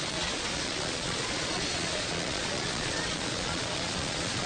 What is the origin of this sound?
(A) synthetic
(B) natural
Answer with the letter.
A